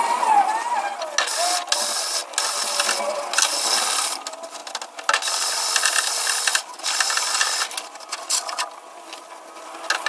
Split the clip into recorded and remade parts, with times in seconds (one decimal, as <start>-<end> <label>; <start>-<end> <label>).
0.0-10.1 recorded